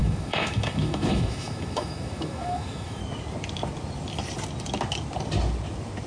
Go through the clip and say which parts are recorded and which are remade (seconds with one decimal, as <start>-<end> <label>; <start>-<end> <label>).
0.0-3.0 remade; 3.0-6.1 recorded